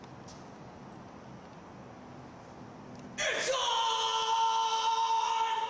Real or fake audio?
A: real